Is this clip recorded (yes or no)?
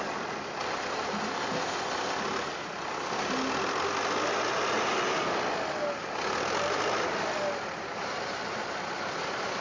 yes